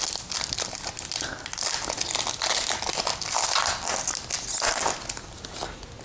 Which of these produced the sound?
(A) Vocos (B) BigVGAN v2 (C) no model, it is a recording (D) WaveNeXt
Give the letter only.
C